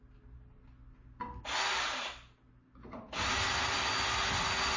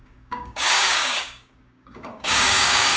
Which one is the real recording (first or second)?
first